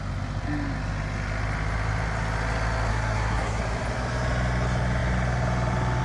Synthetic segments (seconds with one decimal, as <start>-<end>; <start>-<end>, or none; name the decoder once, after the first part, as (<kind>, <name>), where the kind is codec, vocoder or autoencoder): 2.9-3.6 (codec, SNAC)